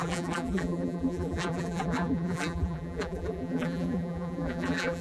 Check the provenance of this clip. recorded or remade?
remade